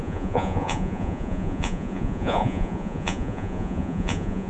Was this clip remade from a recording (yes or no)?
yes